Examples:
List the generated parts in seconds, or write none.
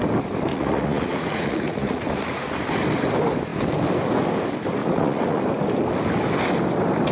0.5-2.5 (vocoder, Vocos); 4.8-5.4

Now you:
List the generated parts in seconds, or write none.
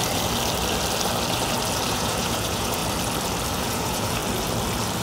1.9-2.8 (vocoder, Vocos); 3.6-4.2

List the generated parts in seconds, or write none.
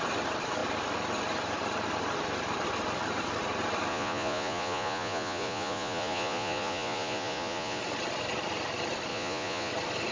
3.9-7.8 (vocoder, Vocos); 9.1-9.7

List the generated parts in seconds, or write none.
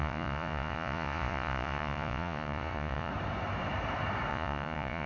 0.0-3.1 (vocoder, Vocos); 4.3-5.1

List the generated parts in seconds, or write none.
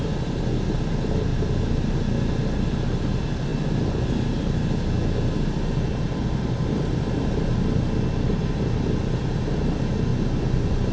10.1-10.9 (vocoder, Vocos)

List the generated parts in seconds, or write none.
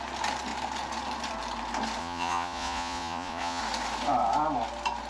2.0-3.6 (vocoder, Vocos)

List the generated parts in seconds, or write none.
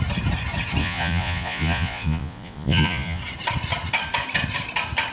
0.8-3.2 (vocoder, Vocos)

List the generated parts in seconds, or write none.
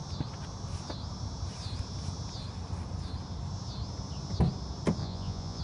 5.0-5.6 (vocoder, Vocos)